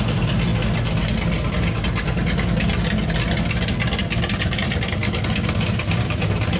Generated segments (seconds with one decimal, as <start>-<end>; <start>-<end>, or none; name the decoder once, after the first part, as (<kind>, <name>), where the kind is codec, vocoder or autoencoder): 0.0-0.5 (vocoder, BigVGAN v2); 4.4-5.0; 5.7-6.6